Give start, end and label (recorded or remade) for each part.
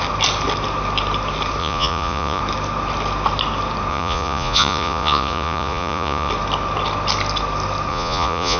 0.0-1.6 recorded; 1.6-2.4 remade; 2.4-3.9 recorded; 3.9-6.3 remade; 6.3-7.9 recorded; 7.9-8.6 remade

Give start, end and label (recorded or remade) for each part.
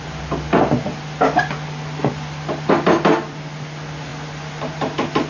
0.0-5.3 recorded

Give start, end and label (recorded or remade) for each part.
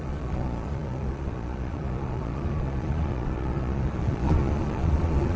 0.0-5.4 remade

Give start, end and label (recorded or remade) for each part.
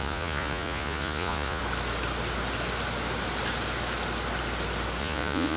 0.0-1.6 remade; 1.6-5.0 recorded; 5.0-5.6 remade